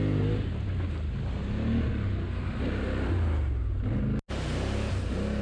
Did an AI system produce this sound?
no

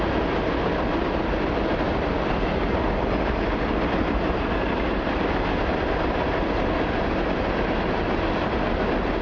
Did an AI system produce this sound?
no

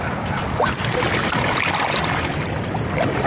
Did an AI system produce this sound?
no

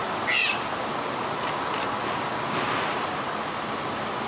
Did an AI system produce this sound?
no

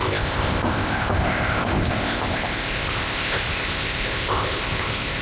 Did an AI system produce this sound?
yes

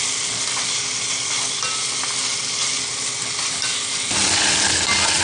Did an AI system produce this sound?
no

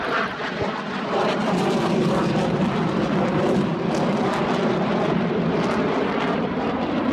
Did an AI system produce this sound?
yes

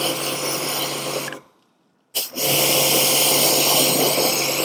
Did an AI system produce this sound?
no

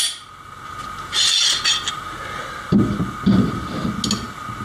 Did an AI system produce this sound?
no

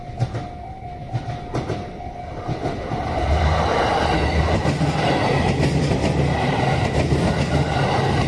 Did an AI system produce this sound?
no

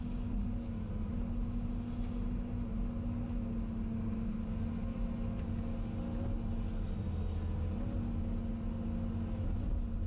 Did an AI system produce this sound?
no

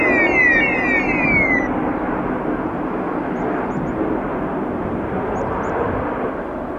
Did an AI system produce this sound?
no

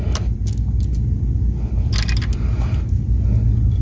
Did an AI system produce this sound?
no